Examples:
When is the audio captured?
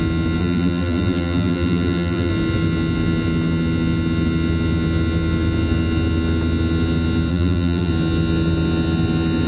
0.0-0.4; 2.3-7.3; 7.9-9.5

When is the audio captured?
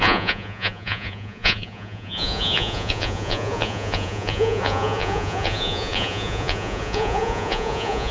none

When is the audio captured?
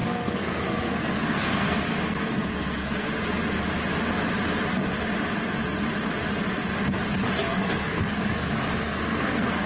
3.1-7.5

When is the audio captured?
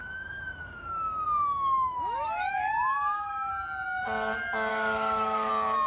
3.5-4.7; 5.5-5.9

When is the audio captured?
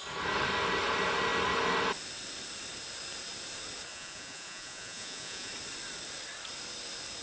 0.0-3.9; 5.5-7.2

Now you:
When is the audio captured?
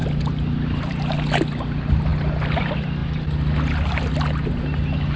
0.0-5.2